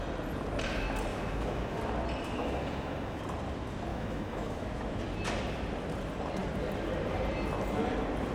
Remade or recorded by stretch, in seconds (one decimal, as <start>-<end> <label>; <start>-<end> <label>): 0.0-1.1 recorded; 1.1-1.8 remade; 1.8-2.4 recorded; 2.4-3.2 remade; 3.2-3.9 recorded; 3.9-5.0 remade; 5.0-8.3 recorded